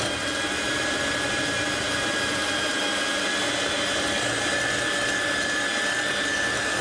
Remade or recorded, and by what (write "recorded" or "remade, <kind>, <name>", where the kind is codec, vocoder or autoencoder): recorded